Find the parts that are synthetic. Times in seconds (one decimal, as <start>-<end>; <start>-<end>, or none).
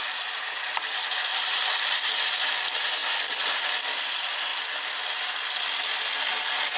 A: 1.3-2.1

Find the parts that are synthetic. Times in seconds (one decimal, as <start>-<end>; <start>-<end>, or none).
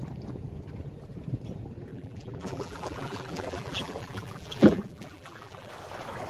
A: 1.9-5.7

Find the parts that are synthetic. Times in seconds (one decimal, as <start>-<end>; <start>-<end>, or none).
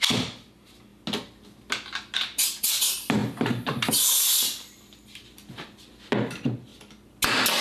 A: none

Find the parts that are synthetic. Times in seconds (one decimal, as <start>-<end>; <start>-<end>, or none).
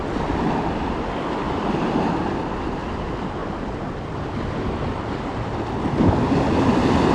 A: none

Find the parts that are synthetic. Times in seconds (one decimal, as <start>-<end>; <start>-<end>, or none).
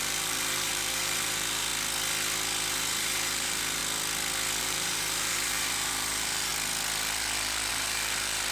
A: 0.0-1.7; 2.7-3.8; 4.6-6.5; 7.7-8.5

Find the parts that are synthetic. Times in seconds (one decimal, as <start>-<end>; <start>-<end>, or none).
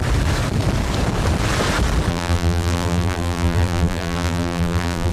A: 2.1-5.1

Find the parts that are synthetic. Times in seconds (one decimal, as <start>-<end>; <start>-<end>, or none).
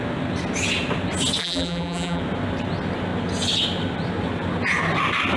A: 1.4-2.2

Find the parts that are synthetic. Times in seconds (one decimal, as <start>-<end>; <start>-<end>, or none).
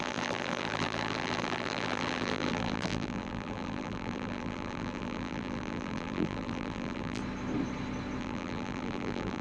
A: 0.0-7.2; 8.2-9.4